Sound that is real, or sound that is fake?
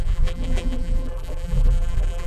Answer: fake